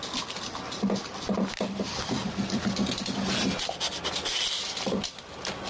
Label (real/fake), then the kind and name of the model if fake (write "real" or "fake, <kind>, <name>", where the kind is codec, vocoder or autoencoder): real